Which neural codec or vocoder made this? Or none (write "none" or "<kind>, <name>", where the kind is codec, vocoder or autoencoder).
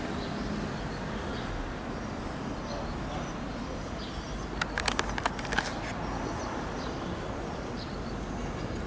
none